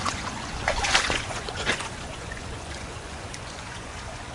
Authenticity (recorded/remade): remade